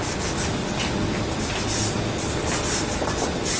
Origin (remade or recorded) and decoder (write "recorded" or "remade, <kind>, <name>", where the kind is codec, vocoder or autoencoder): recorded